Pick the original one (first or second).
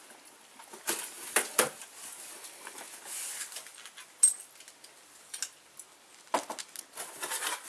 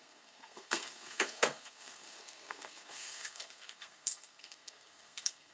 first